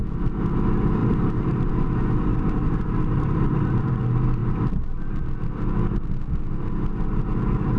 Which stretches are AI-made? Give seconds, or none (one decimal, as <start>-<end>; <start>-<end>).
1.0-1.7; 2.3-3.9